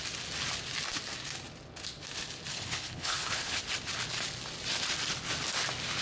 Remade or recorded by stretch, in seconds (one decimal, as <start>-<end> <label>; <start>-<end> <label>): 0.0-2.5 recorded; 2.5-3.6 remade; 3.6-6.0 recorded

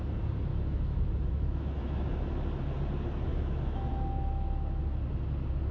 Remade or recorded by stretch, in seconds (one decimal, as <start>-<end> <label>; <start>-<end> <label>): 0.0-0.5 recorded; 0.5-2.1 remade; 2.1-3.3 recorded; 3.3-4.8 remade; 4.8-5.7 recorded